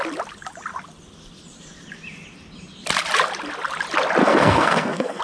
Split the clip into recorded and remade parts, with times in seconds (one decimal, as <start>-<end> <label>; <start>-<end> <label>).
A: 0.0-4.2 recorded; 4.2-5.2 remade